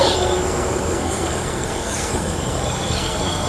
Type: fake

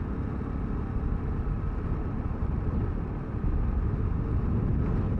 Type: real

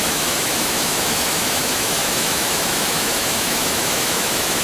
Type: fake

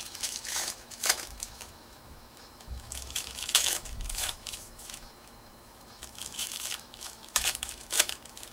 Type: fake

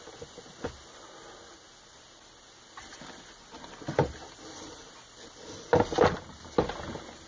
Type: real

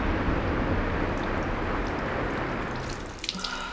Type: real